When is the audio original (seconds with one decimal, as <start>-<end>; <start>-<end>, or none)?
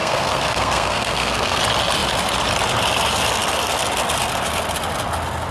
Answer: 1.6-5.5